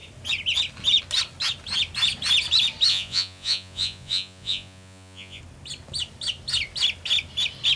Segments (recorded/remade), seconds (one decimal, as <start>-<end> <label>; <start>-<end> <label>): 0.0-2.9 recorded; 2.9-5.4 remade; 5.4-7.8 recorded